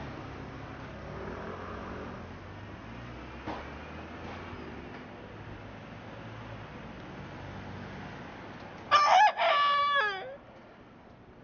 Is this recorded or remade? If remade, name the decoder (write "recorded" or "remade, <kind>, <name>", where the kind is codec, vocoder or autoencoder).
recorded